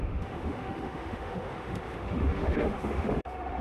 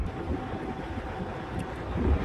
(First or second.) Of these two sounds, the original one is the second